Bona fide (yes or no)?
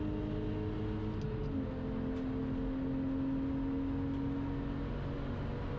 yes